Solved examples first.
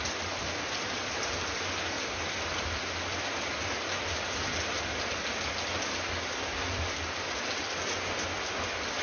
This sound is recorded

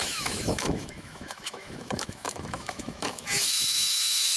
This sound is remade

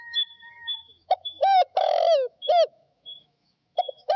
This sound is remade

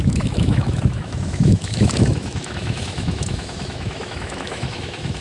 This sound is remade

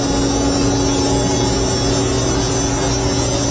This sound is recorded